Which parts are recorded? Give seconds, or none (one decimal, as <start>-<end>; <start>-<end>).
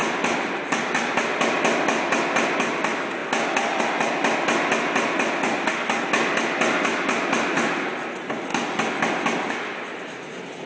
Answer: 1.1-8.5; 9.5-10.7